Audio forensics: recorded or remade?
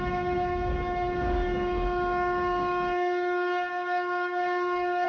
remade